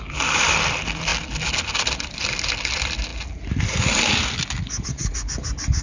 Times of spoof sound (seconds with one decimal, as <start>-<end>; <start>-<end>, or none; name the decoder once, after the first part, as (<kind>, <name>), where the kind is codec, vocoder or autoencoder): none

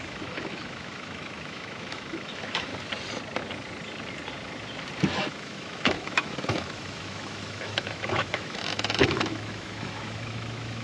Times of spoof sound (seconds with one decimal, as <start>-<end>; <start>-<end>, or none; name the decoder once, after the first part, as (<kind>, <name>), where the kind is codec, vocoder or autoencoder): 0.0-2.7 (autoencoder, DAC-VAE); 5.3-10.8

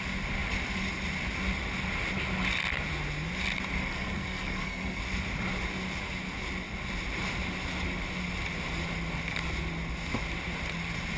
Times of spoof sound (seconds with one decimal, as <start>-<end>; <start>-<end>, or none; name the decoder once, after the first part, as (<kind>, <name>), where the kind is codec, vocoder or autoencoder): 3.8-5.0 (codec, SNAC)

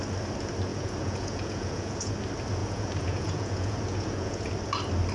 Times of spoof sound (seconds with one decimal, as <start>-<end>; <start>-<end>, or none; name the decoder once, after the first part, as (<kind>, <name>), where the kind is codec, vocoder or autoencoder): 0.7-2.1 (vocoder, Vocos); 2.6-4.5